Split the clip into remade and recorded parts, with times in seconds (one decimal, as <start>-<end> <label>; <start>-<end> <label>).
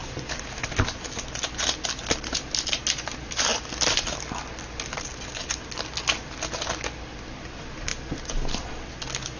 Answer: 0.0-9.4 recorded